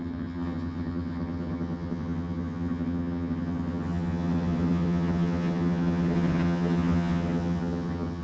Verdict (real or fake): fake